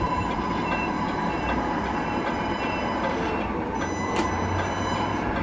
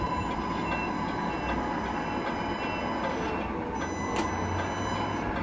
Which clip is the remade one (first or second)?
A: first